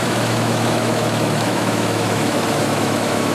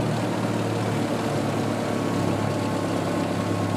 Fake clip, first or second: first